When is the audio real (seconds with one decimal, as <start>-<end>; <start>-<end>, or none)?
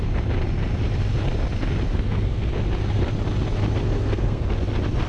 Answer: 0.0-1.9; 2.5-3.8; 4.4-5.1